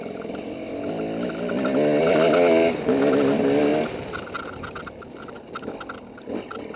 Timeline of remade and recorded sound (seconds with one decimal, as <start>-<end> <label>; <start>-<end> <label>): 0.0-6.8 recorded